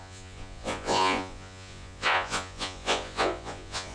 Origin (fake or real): fake